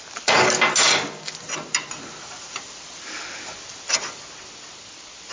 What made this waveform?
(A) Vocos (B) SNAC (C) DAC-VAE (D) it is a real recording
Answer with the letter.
D